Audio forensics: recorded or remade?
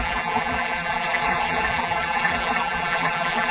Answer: remade